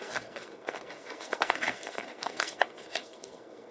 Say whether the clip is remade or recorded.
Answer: remade